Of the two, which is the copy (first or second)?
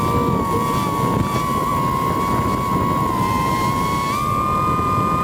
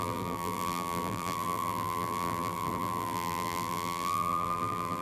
second